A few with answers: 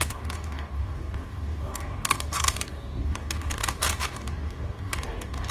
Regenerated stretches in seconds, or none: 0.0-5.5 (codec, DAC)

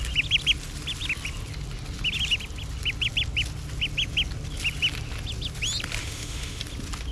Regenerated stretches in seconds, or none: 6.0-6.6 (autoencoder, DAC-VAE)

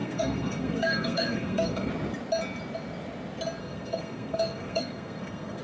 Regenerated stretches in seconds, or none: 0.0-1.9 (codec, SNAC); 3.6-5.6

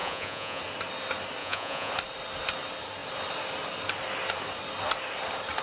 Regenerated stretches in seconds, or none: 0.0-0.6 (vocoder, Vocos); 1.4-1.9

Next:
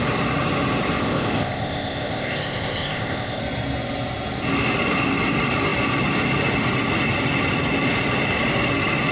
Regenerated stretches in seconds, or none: 1.0-3.4 (codec, ZipCodec)

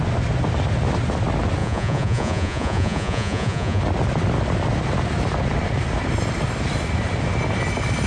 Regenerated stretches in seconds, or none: 1.6-3.8 (vocoder, Vocos)